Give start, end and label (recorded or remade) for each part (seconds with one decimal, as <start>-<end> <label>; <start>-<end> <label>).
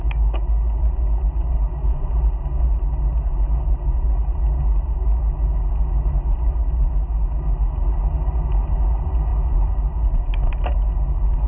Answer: 0.0-11.5 recorded